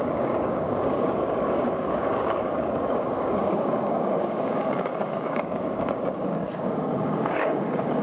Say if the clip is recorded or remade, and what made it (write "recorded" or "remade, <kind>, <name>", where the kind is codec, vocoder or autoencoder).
remade, codec, DAC